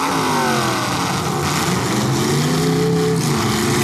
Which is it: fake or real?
real